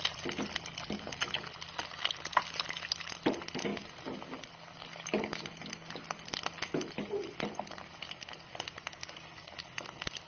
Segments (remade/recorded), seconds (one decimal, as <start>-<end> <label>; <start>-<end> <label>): 0.0-10.3 recorded